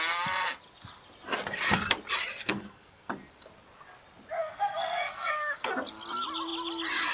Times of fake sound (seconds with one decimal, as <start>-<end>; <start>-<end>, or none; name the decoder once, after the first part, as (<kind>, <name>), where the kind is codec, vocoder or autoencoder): 2.4-3.1 (codec, SNAC); 4.4-5.7